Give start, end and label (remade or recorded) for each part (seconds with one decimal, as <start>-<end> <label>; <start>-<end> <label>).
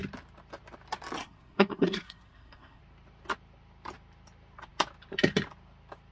0.0-1.2 recorded; 1.2-2.8 remade; 2.8-6.1 recorded